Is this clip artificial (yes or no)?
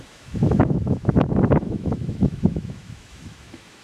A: yes